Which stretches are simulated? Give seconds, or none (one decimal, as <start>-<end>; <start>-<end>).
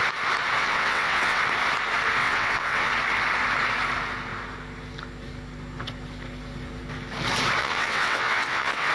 0.6-1.4; 2.2-2.9; 7.6-8.9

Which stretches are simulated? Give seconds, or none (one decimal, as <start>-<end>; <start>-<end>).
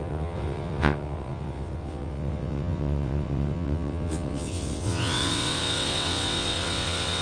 0.0-7.2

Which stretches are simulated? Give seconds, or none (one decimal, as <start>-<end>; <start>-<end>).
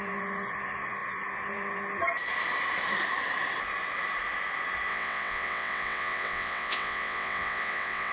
4.9-8.1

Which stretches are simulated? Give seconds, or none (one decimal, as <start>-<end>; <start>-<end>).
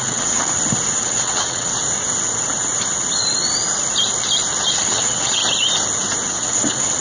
0.0-0.5; 1.0-1.7; 4.7-5.4; 6.3-7.0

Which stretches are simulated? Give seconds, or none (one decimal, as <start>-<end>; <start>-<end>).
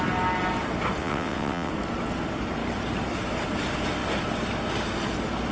1.0-1.7